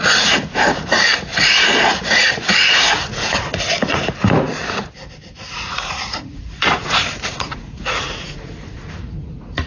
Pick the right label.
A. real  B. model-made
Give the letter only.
B